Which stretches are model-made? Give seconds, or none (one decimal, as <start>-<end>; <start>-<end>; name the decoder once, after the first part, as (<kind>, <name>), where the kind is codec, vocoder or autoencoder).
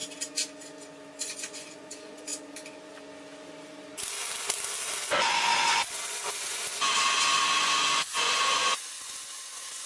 1.2-2.3 (vocoder, Vocos); 5.1-6.9; 7.6-9.9